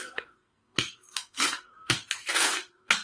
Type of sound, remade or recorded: remade